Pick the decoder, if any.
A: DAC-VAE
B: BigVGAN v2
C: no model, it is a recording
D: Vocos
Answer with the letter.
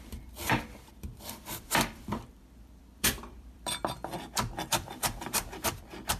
B